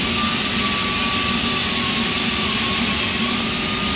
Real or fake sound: real